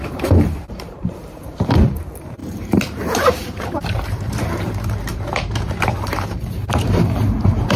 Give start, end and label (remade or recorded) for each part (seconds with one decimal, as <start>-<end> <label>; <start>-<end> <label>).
0.0-7.8 remade